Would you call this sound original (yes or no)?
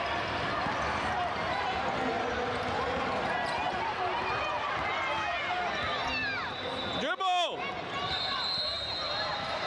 yes